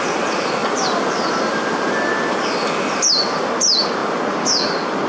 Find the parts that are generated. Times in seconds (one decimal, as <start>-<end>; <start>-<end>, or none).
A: none